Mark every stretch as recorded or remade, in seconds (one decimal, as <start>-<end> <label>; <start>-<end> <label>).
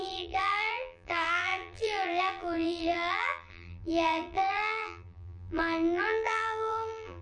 0.0-7.2 remade